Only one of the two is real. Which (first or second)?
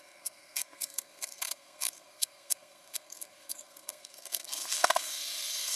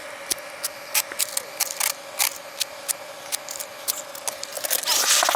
second